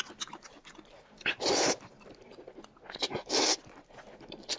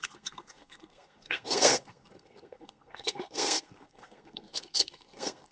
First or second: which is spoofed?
second